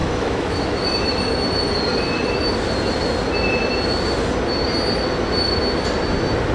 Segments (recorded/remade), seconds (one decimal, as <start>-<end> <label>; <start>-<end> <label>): 0.0-0.8 remade; 0.8-6.5 recorded